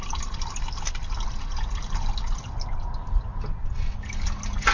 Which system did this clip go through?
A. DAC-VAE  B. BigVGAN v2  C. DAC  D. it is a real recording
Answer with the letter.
D